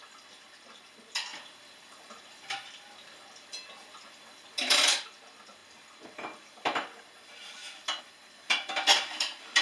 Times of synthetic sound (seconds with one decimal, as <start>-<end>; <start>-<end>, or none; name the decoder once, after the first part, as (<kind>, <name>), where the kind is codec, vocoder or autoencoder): none